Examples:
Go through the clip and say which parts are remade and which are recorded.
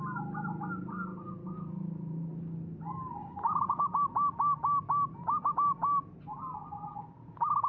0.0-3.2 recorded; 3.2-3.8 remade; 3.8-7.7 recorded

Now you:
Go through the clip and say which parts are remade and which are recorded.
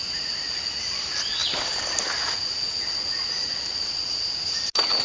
0.0-5.0 recorded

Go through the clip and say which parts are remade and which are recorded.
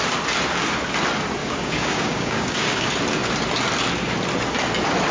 0.0-1.4 recorded; 1.4-2.9 remade; 2.9-5.1 recorded